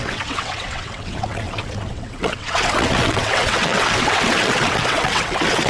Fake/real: fake